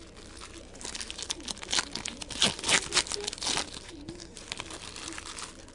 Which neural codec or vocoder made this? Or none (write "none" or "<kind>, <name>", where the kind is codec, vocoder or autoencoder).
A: none